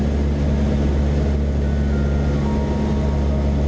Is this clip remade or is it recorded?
recorded